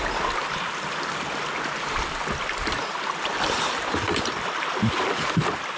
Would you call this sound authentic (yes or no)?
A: yes